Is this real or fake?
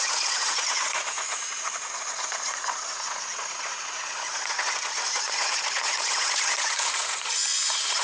fake